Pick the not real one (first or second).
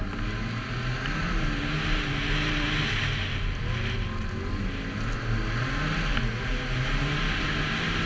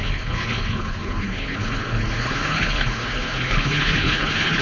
second